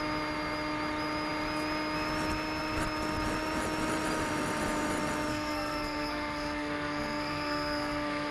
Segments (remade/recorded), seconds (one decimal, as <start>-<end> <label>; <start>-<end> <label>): 0.0-5.3 recorded; 5.3-8.3 remade